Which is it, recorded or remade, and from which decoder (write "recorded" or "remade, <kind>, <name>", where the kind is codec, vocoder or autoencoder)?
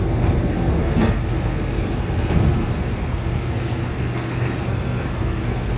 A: remade, codec, SNAC